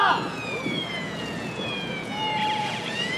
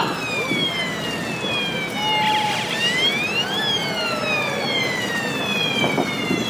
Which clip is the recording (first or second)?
second